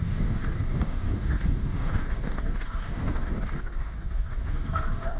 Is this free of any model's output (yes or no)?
no